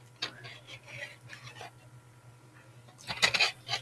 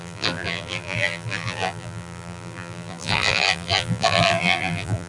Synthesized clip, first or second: second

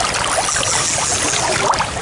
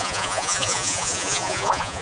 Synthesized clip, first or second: second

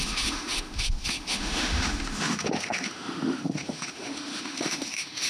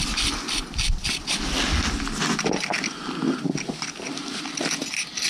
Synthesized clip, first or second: first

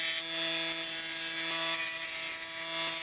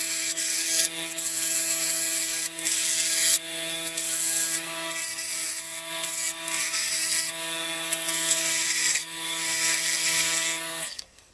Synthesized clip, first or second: second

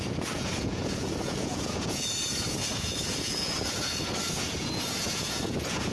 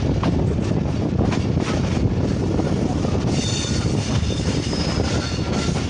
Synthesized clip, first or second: first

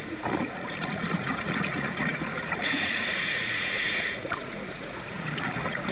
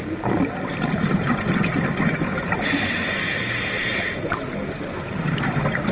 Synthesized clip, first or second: first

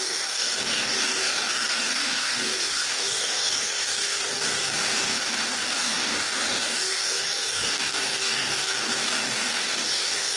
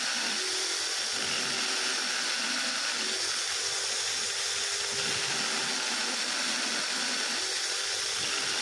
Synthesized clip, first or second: first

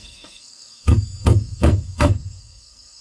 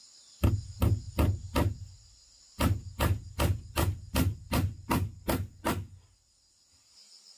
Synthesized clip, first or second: first